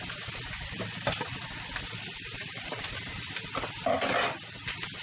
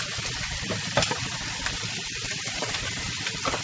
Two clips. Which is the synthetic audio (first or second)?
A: second